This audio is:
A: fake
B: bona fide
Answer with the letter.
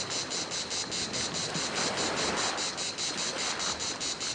B